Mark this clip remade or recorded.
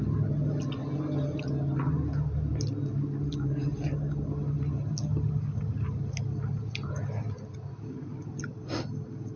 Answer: recorded